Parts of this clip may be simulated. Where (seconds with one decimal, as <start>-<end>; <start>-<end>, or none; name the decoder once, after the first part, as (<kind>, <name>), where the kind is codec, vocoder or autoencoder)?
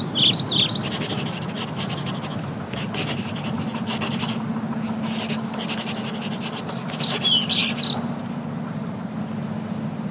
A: none